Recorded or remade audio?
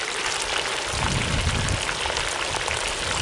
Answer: recorded